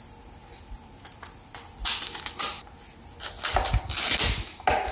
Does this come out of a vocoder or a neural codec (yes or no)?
no